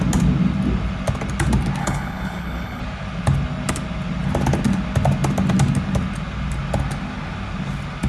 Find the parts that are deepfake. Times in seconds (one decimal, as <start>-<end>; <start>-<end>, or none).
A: 1.8-2.8